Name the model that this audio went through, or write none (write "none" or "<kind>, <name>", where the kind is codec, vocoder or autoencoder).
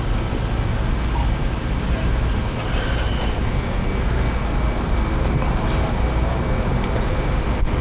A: none